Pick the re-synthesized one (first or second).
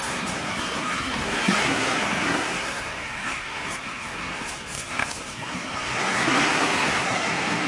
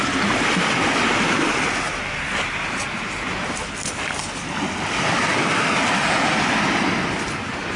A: first